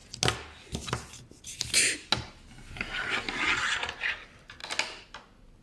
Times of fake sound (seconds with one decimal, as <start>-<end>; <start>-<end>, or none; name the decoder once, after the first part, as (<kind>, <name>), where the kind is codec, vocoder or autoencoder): none